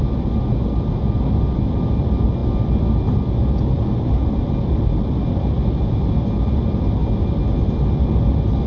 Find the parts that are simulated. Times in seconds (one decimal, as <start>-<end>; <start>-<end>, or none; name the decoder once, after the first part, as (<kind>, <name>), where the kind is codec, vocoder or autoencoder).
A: none

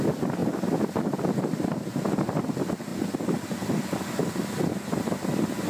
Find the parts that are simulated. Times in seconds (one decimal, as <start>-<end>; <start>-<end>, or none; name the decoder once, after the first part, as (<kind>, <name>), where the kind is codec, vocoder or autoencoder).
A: 0.0-1.9 (vocoder, BigVGAN v2); 2.5-5.7

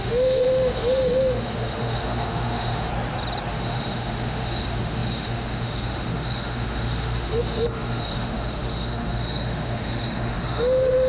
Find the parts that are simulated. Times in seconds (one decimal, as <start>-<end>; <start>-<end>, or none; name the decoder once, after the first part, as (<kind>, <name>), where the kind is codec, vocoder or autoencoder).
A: 0.0-2.9 (autoencoder, DAC-VAE); 3.5-11.1

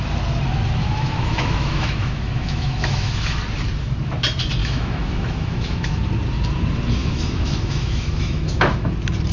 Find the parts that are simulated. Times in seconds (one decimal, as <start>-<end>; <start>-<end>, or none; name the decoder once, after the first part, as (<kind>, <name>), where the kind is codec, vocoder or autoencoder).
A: 0.8-3.4 (autoencoder, DAC-VAE); 4.6-6.0; 7.0-8.9

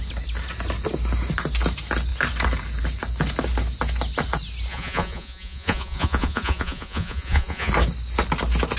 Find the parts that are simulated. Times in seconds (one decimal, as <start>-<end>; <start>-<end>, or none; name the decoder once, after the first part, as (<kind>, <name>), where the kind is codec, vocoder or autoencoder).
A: 4.7-7.7 (vocoder, Vocos)

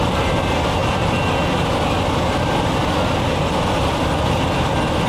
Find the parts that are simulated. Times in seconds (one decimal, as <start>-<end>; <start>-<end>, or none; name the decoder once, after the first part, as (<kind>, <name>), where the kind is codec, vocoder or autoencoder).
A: none

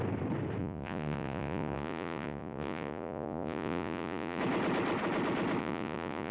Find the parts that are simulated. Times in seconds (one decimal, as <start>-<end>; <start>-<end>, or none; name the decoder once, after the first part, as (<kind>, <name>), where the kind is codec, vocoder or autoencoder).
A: 0.6-4.4 (vocoder, Vocos); 5.6-6.3

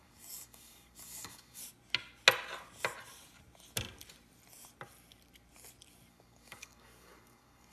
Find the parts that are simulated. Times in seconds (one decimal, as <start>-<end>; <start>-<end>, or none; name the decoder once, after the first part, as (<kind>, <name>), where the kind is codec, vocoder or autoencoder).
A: 0.0-1.6 (codec, DAC); 6.1-7.7